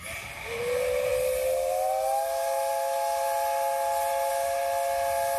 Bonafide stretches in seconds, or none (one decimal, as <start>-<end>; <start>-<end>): 0.0-5.4